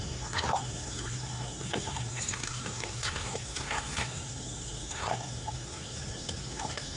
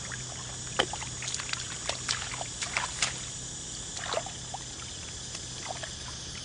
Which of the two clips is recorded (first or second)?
second